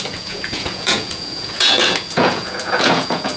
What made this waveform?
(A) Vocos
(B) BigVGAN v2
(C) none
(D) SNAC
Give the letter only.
A